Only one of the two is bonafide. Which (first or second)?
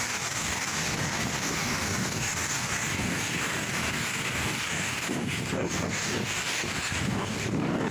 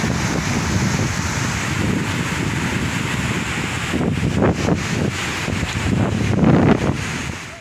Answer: second